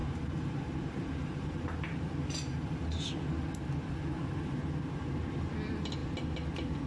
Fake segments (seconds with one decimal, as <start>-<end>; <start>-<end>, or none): 0.0-1.7